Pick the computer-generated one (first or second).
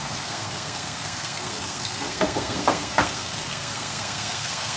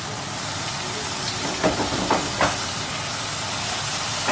first